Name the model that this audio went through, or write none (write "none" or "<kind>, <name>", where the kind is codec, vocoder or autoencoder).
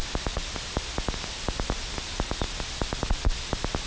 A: none